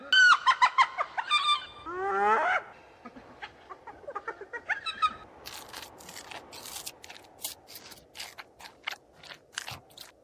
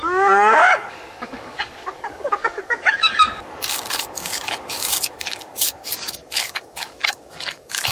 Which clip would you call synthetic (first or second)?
second